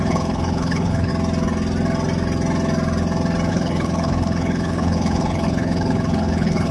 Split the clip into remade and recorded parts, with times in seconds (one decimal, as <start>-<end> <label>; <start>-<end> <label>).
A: 0.0-1.1 remade; 1.1-3.5 recorded; 3.5-6.7 remade